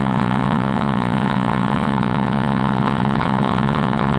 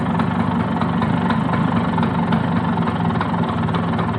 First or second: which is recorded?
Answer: second